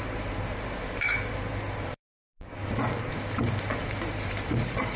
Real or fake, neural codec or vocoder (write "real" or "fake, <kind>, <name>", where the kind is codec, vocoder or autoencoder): fake, vocoder, BigVGAN v2